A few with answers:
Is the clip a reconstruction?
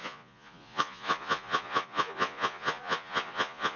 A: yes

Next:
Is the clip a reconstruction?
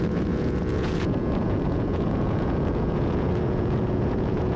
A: yes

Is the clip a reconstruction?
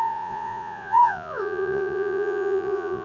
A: yes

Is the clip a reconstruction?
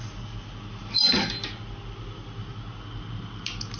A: no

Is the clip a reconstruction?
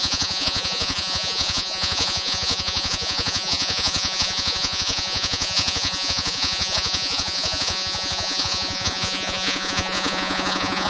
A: yes